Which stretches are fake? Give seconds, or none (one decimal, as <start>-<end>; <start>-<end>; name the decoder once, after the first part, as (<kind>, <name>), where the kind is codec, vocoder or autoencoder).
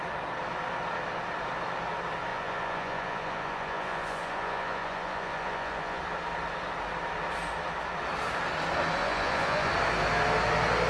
2.3-6.0 (vocoder, Vocos); 9.0-9.7